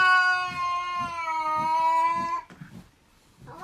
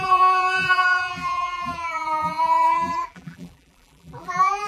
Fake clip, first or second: second